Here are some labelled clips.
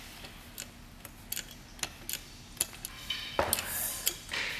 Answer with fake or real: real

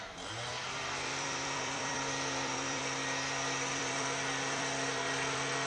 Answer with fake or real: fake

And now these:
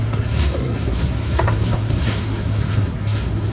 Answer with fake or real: fake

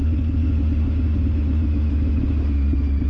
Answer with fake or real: real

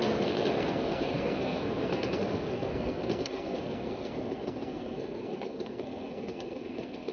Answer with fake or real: fake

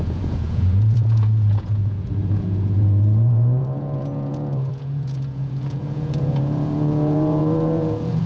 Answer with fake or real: fake